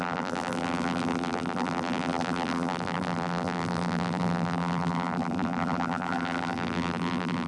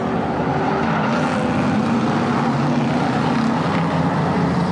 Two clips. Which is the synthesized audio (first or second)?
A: first